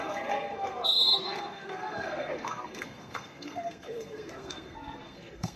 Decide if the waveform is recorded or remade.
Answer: remade